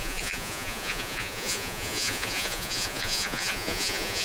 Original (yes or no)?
no